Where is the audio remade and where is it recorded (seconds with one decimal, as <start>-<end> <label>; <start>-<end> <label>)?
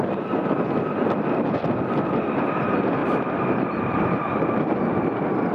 0.0-3.0 recorded; 3.0-4.8 remade; 4.8-5.5 recorded